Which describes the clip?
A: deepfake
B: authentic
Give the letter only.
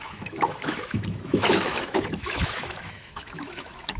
A